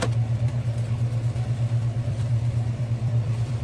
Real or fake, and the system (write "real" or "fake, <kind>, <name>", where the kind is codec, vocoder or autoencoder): fake, vocoder, BigVGAN v2